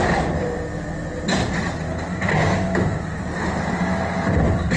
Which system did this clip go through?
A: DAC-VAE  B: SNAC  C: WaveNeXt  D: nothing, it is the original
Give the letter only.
D